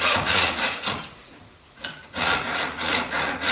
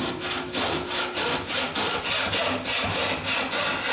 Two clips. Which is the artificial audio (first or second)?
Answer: first